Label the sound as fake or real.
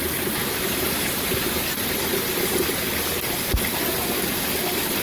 real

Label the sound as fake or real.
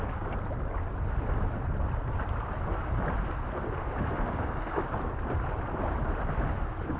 real